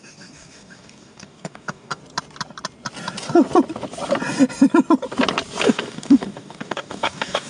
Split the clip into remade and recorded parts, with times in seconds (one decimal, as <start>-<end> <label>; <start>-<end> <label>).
0.0-2.0 remade; 2.0-5.6 recorded; 5.6-7.5 remade